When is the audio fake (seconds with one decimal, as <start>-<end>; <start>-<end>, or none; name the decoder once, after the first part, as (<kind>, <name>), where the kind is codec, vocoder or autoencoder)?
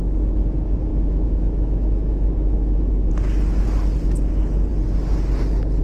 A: 0.9-3.1 (autoencoder, DAC-VAE)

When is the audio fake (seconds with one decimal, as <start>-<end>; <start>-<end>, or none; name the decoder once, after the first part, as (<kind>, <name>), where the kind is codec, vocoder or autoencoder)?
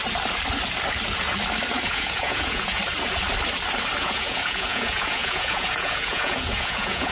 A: 1.9-2.8 (vocoder, Vocos); 4.0-7.1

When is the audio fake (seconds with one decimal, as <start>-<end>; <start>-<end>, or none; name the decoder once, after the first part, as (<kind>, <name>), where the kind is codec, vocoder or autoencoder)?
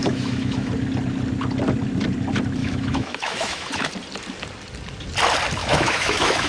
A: 0.0-0.7 (autoencoder, DAC-VAE); 2.6-3.9; 5.6-6.5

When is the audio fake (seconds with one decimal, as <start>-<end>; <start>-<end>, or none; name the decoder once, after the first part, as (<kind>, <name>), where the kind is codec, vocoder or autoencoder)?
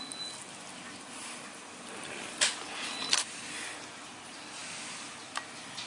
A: none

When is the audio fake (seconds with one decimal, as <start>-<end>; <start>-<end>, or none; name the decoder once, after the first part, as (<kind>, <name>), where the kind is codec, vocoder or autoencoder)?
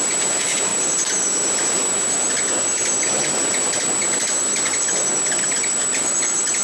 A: none